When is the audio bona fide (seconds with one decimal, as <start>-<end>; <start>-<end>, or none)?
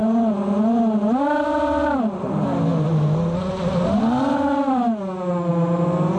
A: 0.0-6.2